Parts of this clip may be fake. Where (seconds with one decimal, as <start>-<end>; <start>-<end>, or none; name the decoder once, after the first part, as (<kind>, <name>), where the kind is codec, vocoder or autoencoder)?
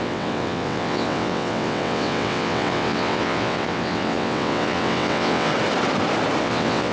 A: 0.0-5.5 (vocoder, WaveNeXt); 6.4-6.9